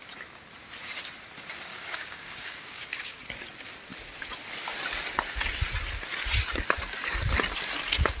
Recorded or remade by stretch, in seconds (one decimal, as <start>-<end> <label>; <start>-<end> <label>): 0.0-1.7 recorded; 1.7-3.2 remade; 3.2-8.2 recorded